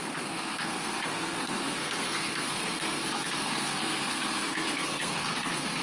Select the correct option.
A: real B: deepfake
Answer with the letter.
B